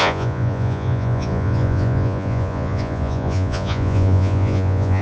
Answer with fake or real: fake